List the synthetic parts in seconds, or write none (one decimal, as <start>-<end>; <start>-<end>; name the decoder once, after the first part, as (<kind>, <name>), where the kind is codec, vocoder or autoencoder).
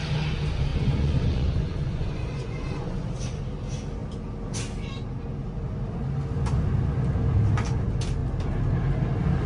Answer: 0.7-3.4 (vocoder, Vocos)